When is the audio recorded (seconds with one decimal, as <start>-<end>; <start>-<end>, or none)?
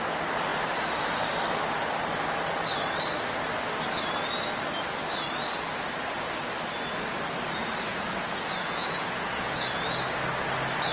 0.0-7.9; 9.8-10.9